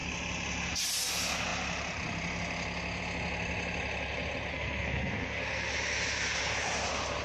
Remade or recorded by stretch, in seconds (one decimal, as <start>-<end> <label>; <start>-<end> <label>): 0.0-4.5 recorded; 4.5-5.7 remade; 5.7-7.2 recorded

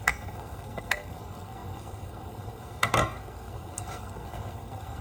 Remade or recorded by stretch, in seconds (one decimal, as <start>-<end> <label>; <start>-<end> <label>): 0.0-5.0 remade

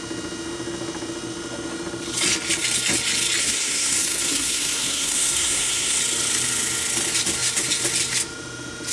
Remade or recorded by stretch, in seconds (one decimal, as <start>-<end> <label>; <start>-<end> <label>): 0.0-3.4 recorded; 3.4-6.0 remade; 6.0-8.9 recorded